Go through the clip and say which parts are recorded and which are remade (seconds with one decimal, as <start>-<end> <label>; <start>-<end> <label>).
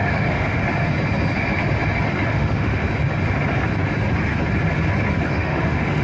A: 0.0-0.6 remade; 0.6-2.3 recorded; 2.3-2.8 remade; 2.8-5.3 recorded; 5.3-6.0 remade